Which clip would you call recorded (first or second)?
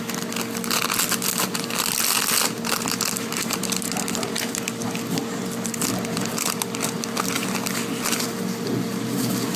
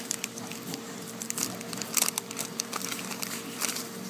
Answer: first